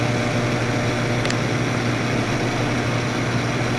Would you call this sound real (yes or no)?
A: yes